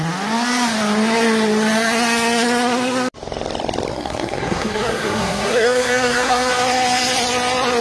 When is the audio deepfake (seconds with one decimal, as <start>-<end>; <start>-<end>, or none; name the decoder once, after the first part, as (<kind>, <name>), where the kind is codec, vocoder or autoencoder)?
3.9-6.5 (codec, SNAC)